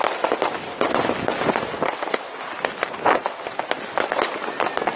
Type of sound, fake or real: real